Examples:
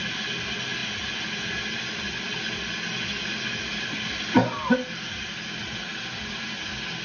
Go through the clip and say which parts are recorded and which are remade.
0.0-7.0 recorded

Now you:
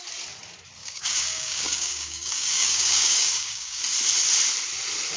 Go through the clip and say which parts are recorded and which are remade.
0.0-0.8 recorded; 0.8-3.8 remade; 3.8-5.2 recorded

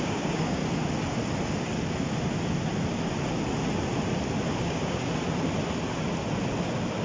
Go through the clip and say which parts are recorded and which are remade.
0.0-0.6 remade; 0.6-4.6 recorded; 4.6-5.0 remade; 5.0-7.0 recorded

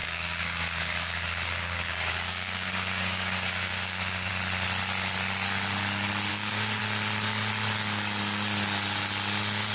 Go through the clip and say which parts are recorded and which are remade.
0.0-4.3 remade; 4.3-6.3 recorded; 6.3-6.8 remade; 6.8-9.7 recorded

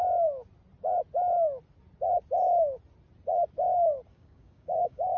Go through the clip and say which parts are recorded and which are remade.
0.0-4.1 recorded; 4.1-5.2 remade

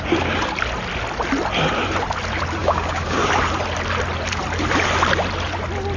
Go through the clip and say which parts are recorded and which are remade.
0.0-2.6 recorded; 2.6-3.3 remade; 3.3-6.0 recorded

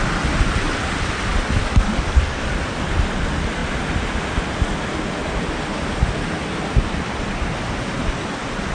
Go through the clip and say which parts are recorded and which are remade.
0.0-1.6 recorded; 1.6-2.5 remade; 2.5-8.7 recorded